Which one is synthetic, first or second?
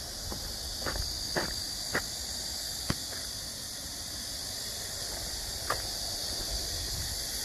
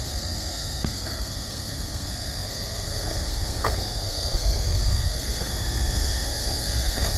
second